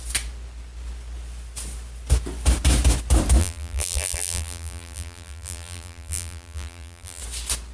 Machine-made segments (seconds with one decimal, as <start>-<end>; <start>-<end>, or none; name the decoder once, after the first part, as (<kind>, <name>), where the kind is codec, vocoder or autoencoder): 3.4-7.2 (vocoder, BigVGAN v2)